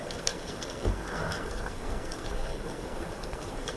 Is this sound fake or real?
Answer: fake